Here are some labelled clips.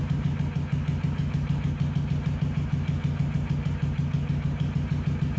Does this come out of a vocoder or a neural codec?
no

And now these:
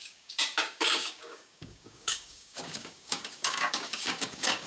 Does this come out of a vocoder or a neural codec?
yes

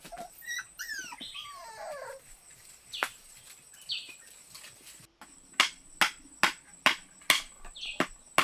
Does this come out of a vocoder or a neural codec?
no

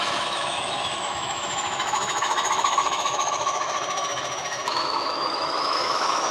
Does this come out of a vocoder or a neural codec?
yes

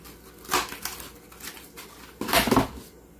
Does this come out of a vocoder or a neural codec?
no